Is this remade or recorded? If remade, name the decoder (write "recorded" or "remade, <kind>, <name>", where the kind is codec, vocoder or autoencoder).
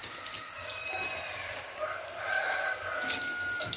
recorded